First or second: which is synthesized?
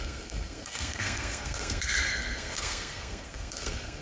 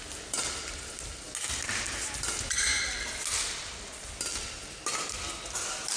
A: first